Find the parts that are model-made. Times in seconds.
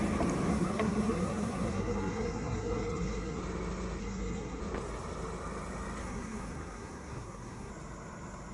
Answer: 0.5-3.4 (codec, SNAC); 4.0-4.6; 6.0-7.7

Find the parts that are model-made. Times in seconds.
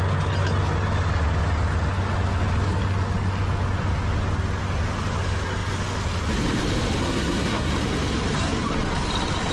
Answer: 7.0-7.7 (codec, SNAC)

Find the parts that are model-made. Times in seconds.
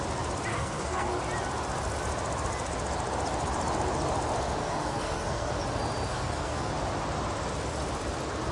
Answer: 0.5-1.2 (codec, SNAC); 4.6-5.5; 6.1-6.7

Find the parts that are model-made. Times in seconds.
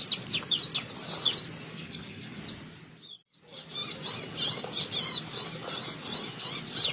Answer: 1.7-2.4 (codec, SNAC)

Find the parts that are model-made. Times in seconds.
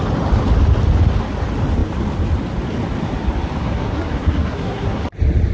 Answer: 3.6-5.0 (codec, SNAC)